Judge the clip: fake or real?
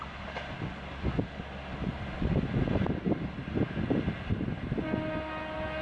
real